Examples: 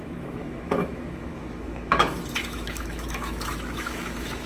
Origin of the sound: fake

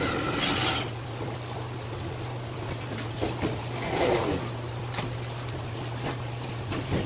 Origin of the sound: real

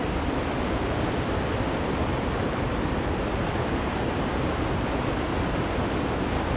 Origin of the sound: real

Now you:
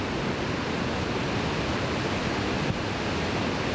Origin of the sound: real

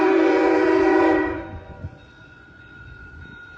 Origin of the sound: fake